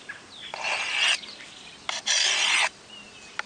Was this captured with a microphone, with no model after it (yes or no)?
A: yes